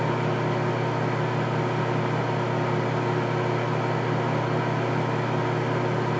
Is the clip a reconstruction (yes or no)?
no